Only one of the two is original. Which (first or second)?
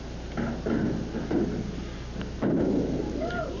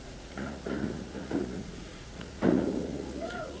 first